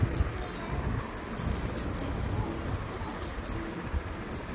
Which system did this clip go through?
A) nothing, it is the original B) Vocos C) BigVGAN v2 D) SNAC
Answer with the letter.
A